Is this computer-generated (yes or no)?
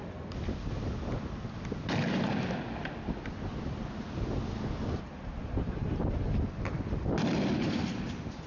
no